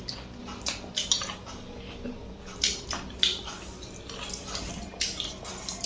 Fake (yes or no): no